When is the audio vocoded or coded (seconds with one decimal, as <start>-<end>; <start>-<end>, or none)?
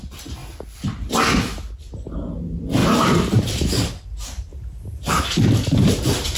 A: 0.4-1.1; 2.8-3.9; 4.5-5.2